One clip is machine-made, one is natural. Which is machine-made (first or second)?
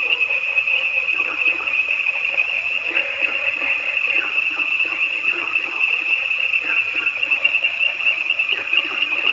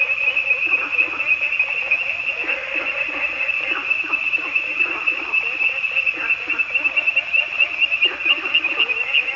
first